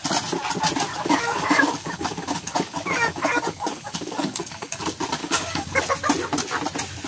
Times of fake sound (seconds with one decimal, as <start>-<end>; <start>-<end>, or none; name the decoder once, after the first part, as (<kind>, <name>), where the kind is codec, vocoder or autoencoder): 0.9-4.8 (codec, DAC); 5.2-5.8